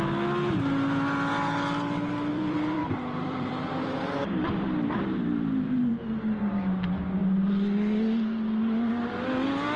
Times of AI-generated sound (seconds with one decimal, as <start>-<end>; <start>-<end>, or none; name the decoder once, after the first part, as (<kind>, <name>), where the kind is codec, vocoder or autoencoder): 2.3-5.9 (vocoder, BigVGAN v2)